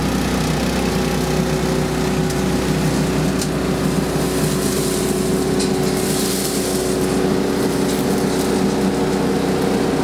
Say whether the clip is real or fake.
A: real